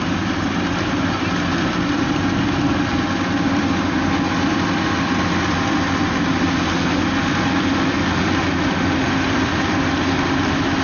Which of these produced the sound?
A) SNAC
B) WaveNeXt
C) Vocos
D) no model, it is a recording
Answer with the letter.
D